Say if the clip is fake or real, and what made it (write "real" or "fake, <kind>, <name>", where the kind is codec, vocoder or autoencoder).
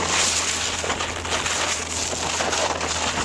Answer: real